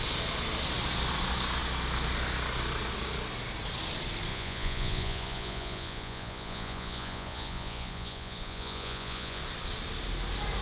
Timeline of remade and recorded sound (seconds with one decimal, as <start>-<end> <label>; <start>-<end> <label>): 0.0-4.3 recorded; 4.3-9.4 remade; 9.4-10.6 recorded